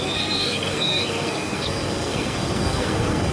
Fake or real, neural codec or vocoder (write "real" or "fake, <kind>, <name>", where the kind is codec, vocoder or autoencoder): fake, codec, SNAC